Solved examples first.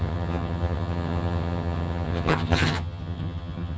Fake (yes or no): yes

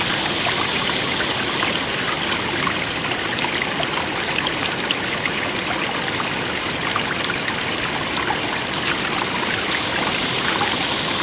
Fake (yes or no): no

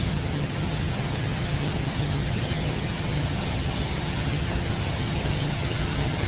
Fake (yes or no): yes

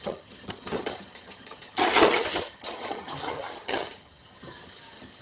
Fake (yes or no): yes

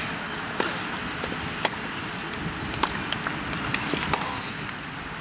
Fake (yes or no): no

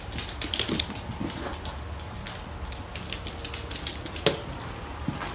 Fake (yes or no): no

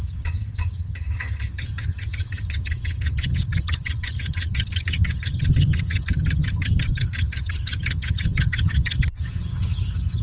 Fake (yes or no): yes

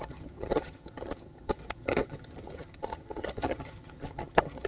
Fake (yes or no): yes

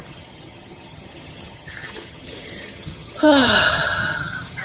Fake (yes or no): yes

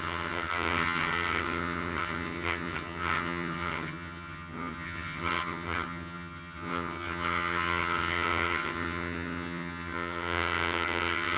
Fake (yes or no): yes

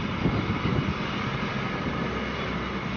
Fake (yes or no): no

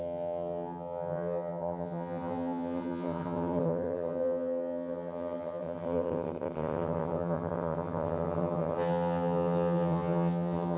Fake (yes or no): yes